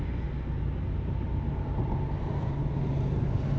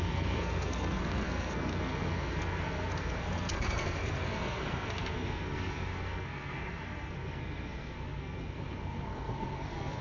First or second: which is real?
first